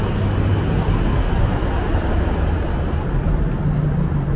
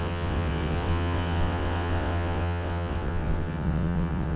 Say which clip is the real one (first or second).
first